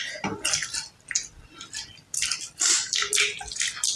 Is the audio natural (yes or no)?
yes